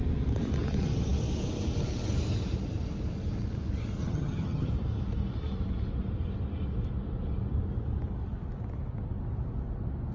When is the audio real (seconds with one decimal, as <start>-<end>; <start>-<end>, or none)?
0.0-4.0; 4.7-10.1